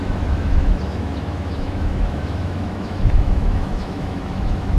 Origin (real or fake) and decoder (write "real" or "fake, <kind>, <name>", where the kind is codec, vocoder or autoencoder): fake, autoencoder, DAC-VAE